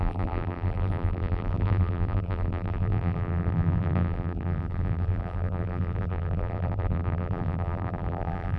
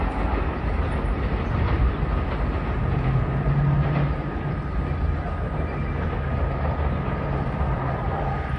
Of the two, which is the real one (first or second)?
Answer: second